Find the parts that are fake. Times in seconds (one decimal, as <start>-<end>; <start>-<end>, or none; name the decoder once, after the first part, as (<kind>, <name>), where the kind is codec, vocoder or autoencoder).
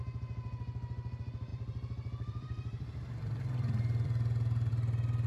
1.5-4.7 (vocoder, BigVGAN v2)